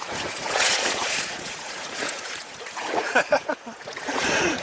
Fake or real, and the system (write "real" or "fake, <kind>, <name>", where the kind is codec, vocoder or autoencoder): fake, vocoder, Vocos